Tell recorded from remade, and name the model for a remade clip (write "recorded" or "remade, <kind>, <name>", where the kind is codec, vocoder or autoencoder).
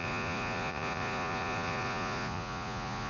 remade, vocoder, Vocos